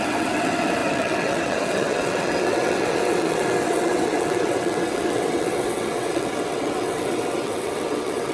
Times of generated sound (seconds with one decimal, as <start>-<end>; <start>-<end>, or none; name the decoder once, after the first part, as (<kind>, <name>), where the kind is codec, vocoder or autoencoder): 0.0-8.3 (vocoder, WaveNeXt)